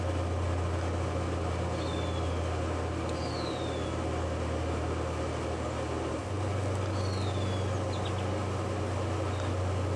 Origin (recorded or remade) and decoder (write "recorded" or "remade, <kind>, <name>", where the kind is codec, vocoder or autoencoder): recorded